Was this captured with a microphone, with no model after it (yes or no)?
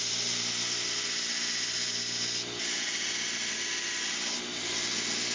yes